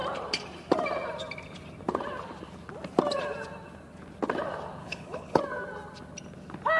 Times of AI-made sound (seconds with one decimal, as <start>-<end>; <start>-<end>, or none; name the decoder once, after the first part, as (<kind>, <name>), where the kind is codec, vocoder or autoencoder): 4.8-5.4 (codec, HILCodec)